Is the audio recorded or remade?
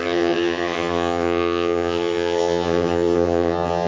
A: remade